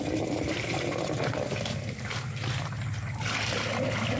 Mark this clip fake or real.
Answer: real